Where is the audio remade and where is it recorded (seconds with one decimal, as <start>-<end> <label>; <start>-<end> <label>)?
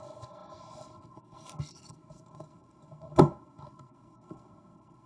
0.0-5.1 remade